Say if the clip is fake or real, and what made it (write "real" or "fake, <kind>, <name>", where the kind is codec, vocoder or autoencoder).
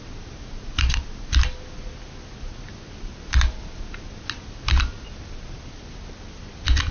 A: real